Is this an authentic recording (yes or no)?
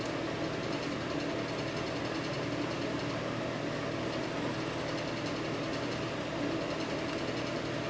yes